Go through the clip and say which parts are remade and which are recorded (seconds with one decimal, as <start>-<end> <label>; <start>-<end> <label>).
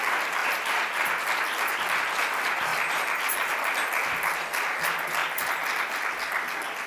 0.0-5.2 recorded; 5.2-5.9 remade; 5.9-6.9 recorded